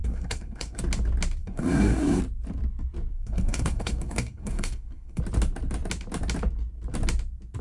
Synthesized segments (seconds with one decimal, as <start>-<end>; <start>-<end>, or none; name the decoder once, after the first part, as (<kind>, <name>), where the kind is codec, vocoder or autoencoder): 0.0-0.8 (codec, SNAC); 1.4-2.2; 3.1-5.2